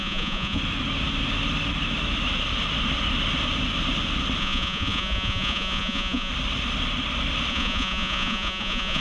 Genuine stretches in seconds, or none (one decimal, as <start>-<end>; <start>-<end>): 0.6-4.4; 6.3-7.5